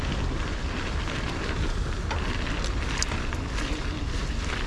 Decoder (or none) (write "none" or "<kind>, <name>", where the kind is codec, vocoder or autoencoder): none